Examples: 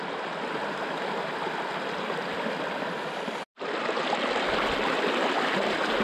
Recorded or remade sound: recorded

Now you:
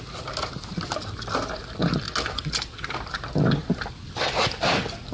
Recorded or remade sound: recorded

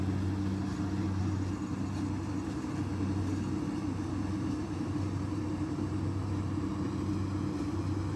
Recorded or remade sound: recorded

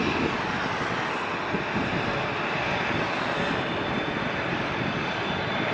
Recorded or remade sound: recorded